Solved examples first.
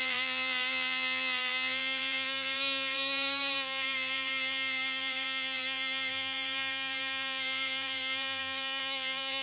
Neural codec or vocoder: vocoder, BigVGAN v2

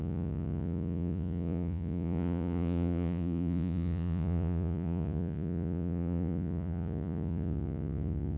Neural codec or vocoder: vocoder, Vocos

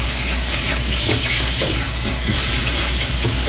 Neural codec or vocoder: codec, DAC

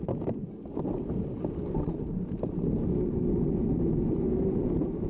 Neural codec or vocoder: none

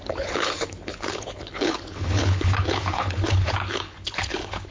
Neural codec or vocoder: codec, HILCodec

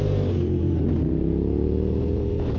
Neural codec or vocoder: vocoder, BigVGAN v2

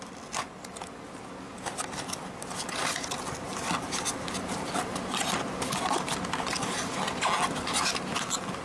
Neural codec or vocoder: none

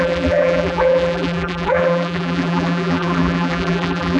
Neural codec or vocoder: vocoder, BigVGAN v2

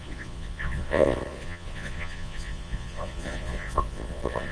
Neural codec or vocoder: vocoder, Vocos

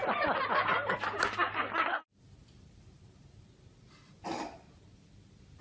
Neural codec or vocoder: none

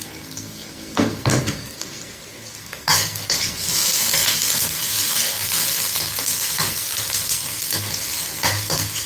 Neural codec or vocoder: codec, SNAC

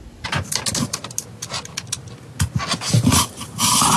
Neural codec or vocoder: none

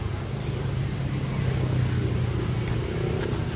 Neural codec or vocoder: none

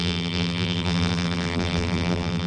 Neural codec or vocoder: vocoder, BigVGAN v2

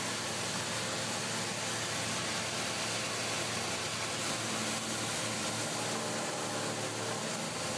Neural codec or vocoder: none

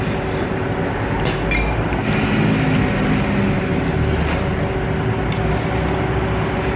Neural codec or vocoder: none